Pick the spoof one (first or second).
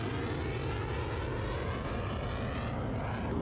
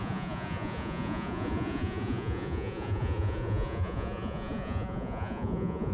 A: second